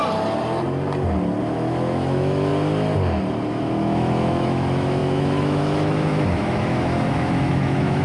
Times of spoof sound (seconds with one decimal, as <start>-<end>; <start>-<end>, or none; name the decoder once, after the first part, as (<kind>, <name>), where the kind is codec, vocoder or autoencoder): 1.4-2.5 (autoencoder, DAC-VAE); 3.5-8.0